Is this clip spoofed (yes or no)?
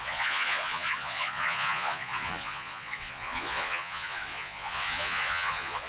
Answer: yes